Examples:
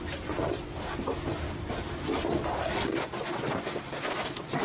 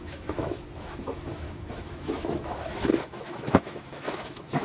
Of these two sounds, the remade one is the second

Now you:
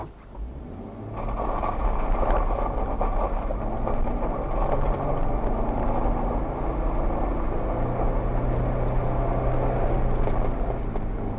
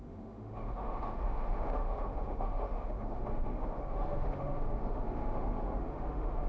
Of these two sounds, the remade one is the second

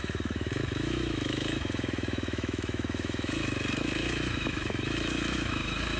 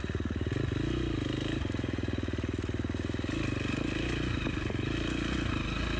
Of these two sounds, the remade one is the first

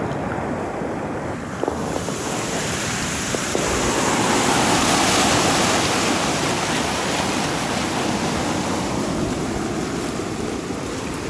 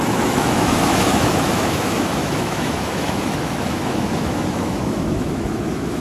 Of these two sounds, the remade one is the second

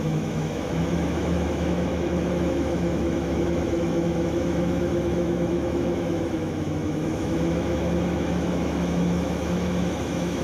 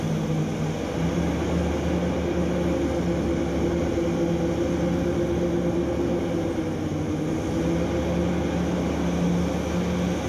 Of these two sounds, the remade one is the first